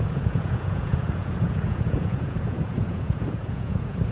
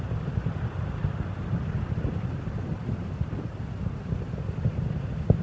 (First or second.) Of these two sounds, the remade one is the first